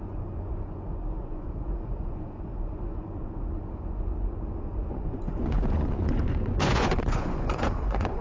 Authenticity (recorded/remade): remade